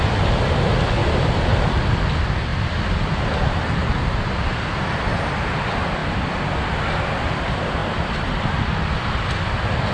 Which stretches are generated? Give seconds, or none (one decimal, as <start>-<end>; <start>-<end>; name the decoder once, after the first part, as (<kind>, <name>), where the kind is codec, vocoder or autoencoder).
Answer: 1.0-1.7 (vocoder, BigVGAN v2); 2.5-4.0; 6.0-6.6; 7.8-8.4